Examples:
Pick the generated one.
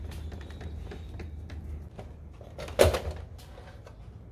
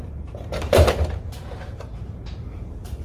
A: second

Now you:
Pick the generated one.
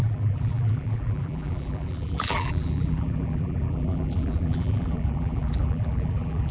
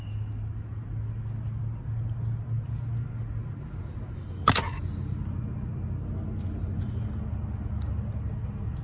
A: first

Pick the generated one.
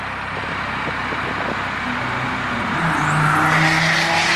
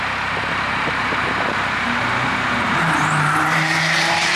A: second